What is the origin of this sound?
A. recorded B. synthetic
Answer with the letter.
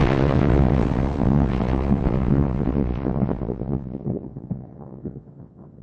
B